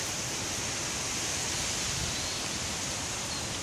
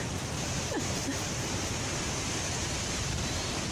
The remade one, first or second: second